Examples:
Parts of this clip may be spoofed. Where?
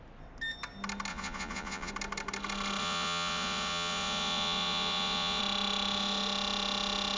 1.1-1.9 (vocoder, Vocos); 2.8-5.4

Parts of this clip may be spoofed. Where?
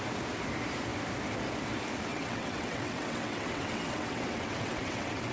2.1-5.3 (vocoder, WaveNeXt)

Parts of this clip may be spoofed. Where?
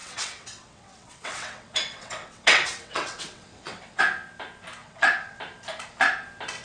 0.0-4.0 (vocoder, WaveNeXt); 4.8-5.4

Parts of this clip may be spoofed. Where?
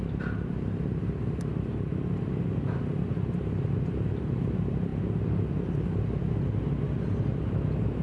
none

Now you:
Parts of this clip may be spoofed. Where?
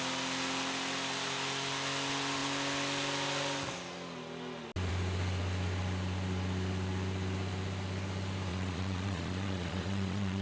8.5-10.4 (vocoder, Vocos)